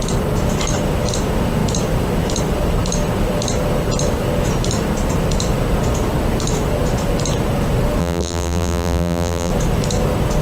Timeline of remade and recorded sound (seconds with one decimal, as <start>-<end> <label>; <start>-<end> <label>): 0.0-8.0 recorded; 8.0-9.5 remade; 9.5-10.4 recorded